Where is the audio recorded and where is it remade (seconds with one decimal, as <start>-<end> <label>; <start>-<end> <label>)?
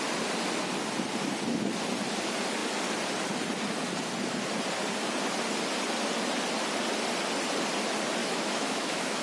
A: 0.0-8.2 recorded; 8.2-9.2 remade